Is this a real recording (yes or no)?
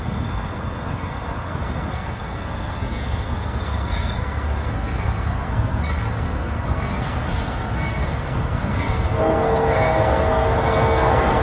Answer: no